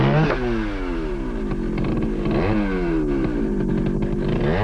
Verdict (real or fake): real